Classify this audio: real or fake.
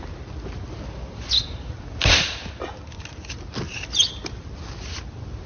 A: real